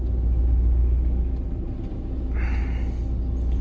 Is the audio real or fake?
real